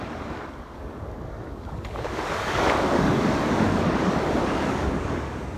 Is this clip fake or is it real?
fake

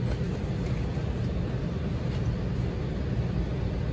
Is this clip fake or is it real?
real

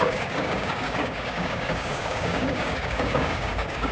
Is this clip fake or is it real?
fake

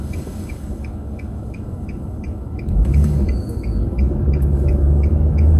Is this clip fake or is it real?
fake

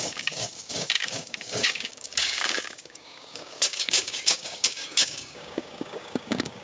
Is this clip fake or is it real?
fake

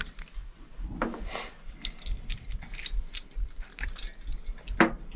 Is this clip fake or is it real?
real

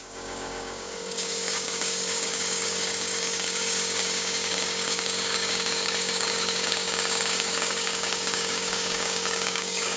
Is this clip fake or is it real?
fake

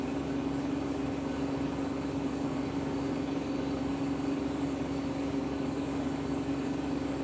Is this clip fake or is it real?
fake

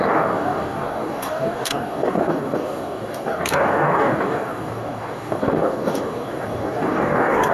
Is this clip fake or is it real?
fake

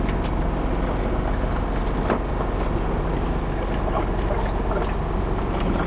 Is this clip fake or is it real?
real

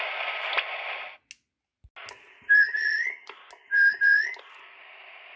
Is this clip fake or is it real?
real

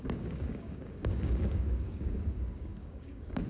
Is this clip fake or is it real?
fake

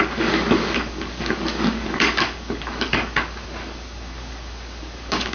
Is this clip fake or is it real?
fake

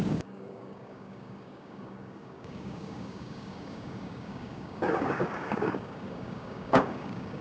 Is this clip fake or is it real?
fake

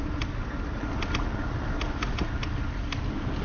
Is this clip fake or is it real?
real